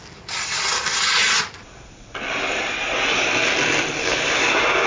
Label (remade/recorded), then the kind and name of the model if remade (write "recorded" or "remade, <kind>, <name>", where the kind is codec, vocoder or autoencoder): recorded